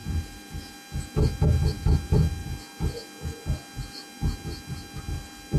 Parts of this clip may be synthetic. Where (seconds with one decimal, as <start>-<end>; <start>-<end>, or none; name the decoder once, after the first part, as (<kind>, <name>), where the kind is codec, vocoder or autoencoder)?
0.0-0.6 (vocoder, BigVGAN v2)